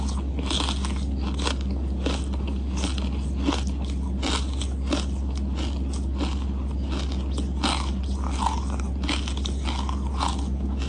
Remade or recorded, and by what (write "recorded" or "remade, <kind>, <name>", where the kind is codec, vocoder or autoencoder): recorded